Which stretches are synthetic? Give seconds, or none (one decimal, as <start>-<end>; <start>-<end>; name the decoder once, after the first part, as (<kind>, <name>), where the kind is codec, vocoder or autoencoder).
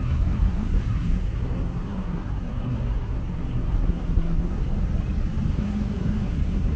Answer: 0.0-4.9 (codec, SNAC); 5.5-6.8